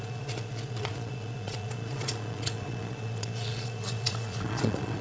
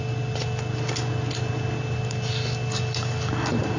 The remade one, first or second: first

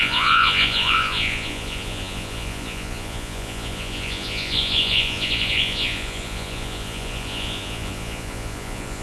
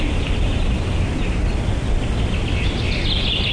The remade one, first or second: first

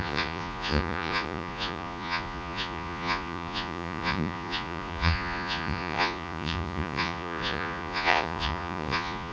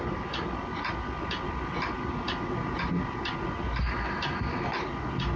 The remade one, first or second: first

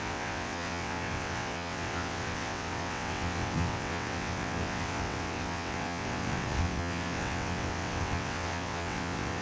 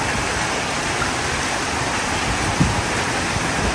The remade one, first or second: first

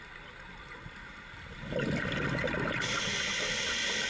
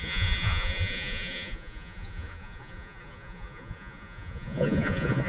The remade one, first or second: second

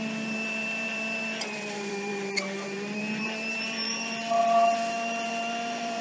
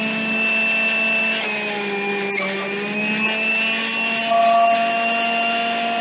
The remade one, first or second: first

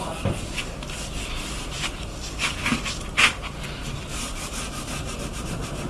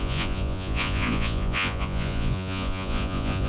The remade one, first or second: second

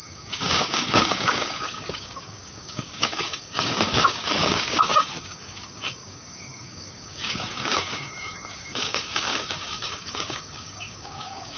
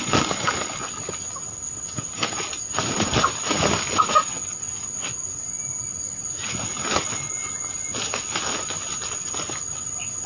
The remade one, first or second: first